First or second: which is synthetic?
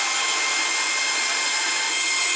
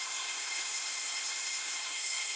second